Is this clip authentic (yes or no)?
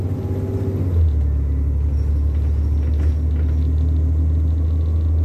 yes